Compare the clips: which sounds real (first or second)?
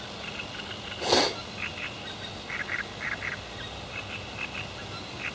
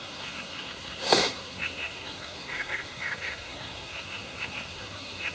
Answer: first